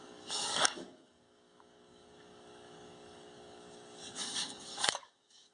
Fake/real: fake